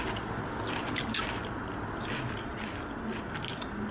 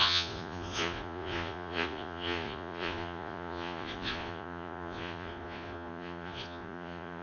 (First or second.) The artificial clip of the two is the second